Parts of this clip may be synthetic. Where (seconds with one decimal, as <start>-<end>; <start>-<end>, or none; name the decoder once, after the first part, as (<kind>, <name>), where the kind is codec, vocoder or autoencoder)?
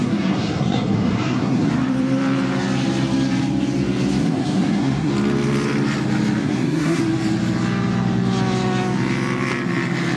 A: 0.0-1.7 (codec, SNAC); 4.2-5.1; 6.4-7.0